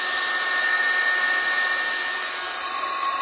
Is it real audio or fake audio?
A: real